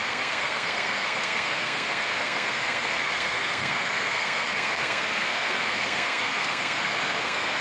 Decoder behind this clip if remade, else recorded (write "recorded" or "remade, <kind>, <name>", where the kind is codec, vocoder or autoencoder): remade, codec, SNAC